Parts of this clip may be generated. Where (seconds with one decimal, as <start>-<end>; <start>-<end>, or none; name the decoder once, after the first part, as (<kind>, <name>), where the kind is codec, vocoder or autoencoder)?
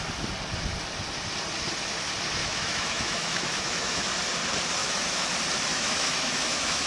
2.4-4.0 (autoencoder, DAC-VAE); 4.8-5.3; 5.7-6.9